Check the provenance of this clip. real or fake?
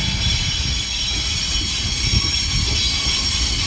real